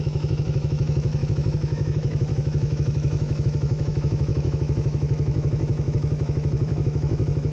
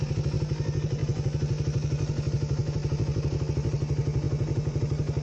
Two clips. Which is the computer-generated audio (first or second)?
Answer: first